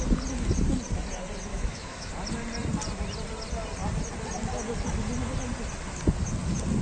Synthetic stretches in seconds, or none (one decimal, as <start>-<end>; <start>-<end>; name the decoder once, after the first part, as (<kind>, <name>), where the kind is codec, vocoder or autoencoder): 1.5-2.1 (autoencoder, DAC-VAE)